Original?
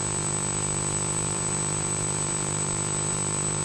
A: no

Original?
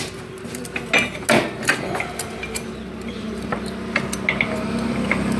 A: yes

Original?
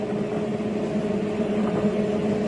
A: yes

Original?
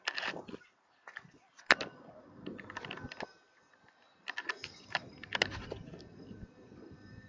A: yes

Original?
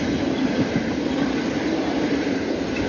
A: yes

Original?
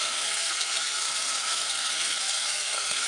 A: no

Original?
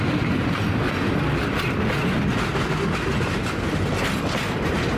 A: yes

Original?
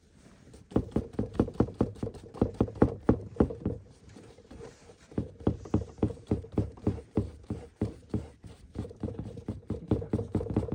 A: no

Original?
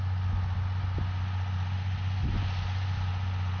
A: yes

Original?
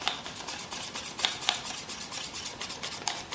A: yes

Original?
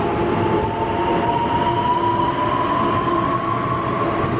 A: yes